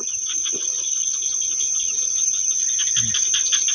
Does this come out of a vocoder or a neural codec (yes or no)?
no